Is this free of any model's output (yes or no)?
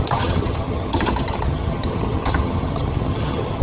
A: no